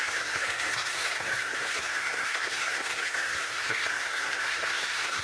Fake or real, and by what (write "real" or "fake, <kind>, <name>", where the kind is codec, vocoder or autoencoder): fake, codec, SNAC